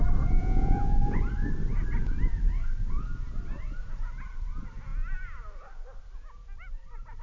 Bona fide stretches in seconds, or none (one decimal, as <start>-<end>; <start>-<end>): 0.0-0.4; 1.2-7.2